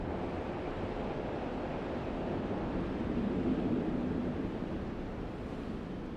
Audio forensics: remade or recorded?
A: remade